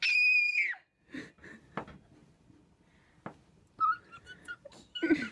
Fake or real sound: real